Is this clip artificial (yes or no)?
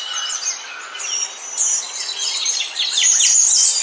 no